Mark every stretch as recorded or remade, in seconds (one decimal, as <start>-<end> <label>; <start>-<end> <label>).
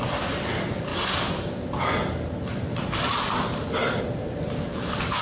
0.0-5.2 recorded